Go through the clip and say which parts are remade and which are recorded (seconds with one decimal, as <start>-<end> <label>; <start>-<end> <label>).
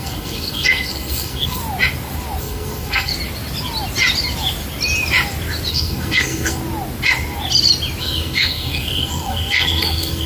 0.0-1.6 remade; 1.6-2.4 recorded; 2.4-3.1 remade; 3.1-5.7 recorded; 5.7-6.6 remade; 6.6-8.0 recorded; 8.0-10.3 remade